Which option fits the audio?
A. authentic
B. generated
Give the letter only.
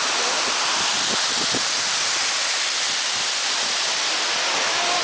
A